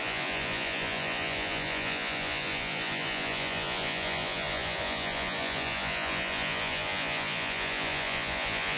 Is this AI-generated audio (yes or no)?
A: yes